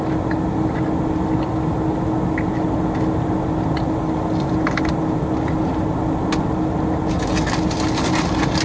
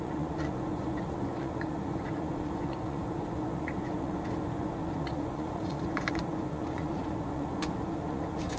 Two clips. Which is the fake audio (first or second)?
second